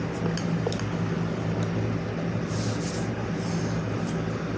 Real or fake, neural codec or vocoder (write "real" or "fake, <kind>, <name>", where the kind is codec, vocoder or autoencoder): real